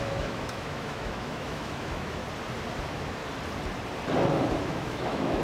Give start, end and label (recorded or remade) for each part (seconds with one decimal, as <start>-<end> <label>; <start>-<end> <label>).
0.0-2.2 remade; 2.2-2.8 recorded; 2.8-3.2 remade; 3.2-4.6 recorded; 4.6-5.4 remade